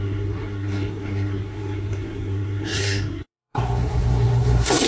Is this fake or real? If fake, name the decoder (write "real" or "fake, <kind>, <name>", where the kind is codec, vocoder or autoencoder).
fake, codec, SNAC